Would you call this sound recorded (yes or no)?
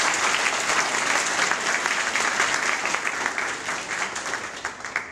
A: yes